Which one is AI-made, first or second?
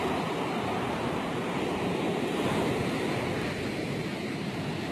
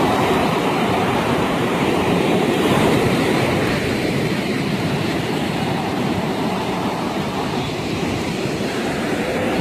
second